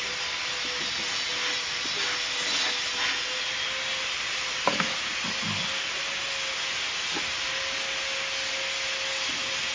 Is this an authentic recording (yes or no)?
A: yes